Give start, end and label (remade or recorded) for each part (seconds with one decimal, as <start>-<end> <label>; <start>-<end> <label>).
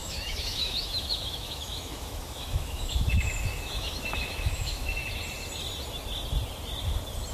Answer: 0.0-5.0 remade; 5.0-7.3 recorded